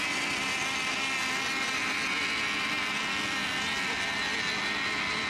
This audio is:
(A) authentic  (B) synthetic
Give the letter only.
A